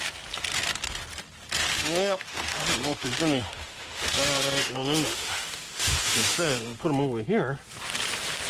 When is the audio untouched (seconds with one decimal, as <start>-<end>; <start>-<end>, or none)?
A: 0.0-1.7; 6.8-8.5